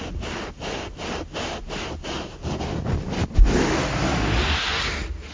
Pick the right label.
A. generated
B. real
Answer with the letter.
B